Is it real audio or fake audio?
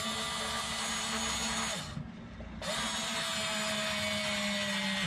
real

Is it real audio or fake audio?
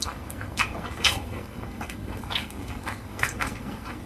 fake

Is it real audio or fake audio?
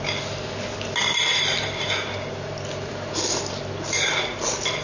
real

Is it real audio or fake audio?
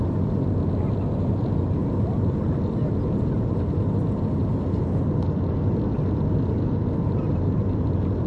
real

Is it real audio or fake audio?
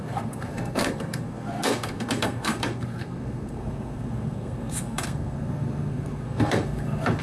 fake